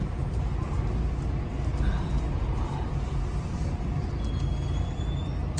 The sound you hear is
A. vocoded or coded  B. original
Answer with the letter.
B